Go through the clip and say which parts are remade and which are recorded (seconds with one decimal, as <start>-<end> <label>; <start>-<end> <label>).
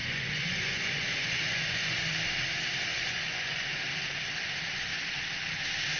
0.0-2.1 remade; 2.1-2.9 recorded; 2.9-3.7 remade; 3.7-6.0 recorded